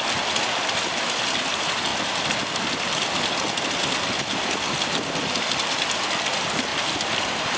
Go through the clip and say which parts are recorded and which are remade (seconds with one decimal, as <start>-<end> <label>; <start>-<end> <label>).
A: 0.0-7.6 recorded